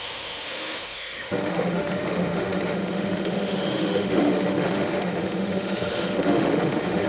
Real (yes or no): no